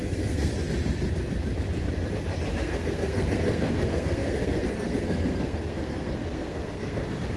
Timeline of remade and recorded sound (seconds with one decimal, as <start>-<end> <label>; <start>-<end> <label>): 0.0-0.5 remade; 0.5-2.5 recorded; 2.5-7.4 remade